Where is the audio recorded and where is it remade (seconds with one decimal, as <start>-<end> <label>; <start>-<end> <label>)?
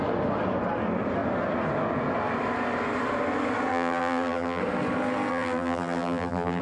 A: 0.0-3.7 recorded; 3.7-4.6 remade; 4.6-5.3 recorded; 5.3-6.6 remade